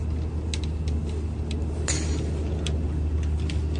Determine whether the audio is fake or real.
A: real